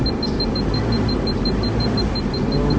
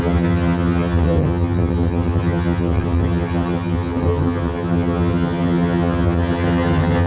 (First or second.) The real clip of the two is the first